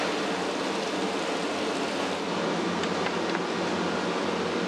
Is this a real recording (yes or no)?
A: yes